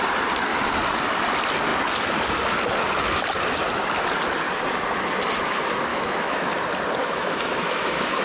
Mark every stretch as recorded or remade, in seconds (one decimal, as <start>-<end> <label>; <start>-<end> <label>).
0.0-5.9 recorded; 5.9-6.5 remade; 6.5-7.0 recorded; 7.0-8.2 remade

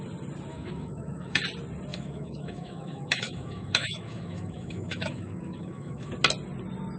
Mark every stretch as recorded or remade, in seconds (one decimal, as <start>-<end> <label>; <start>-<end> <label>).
0.0-0.5 recorded; 0.5-1.4 remade; 1.4-1.9 recorded; 1.9-6.1 remade; 6.1-7.0 recorded

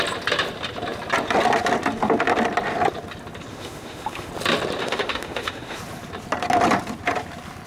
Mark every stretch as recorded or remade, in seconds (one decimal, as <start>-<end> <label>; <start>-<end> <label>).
0.0-3.5 recorded; 3.5-4.3 remade; 4.3-4.8 recorded; 4.8-5.8 remade; 5.8-7.7 recorded

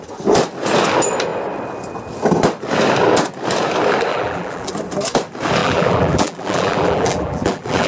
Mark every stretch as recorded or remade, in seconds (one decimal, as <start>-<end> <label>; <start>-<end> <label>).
0.0-4.1 recorded; 4.1-4.7 remade; 4.7-5.6 recorded; 5.6-7.9 remade

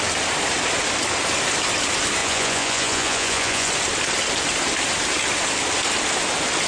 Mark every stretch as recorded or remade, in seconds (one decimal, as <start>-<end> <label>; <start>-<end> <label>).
0.0-2.2 recorded; 2.2-3.7 remade; 3.7-6.7 recorded

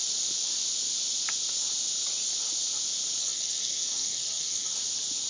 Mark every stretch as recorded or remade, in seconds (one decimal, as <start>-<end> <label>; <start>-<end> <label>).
0.0-3.2 recorded; 3.2-4.7 remade; 4.7-5.3 recorded

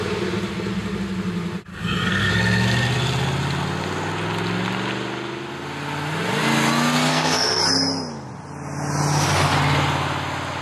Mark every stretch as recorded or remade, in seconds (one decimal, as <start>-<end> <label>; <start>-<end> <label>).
0.0-1.7 recorded; 1.7-2.3 remade; 2.3-7.1 recorded; 7.1-7.6 remade; 7.6-10.6 recorded

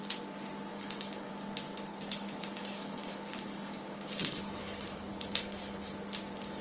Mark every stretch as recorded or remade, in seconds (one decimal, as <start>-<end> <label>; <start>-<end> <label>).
0.0-0.7 recorded; 0.7-1.3 remade; 1.3-1.9 recorded; 1.9-5.9 remade; 5.9-6.6 recorded